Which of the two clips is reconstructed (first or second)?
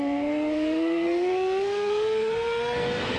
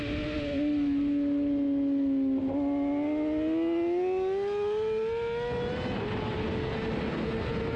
first